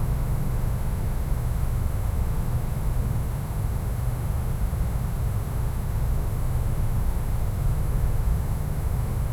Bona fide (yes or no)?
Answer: no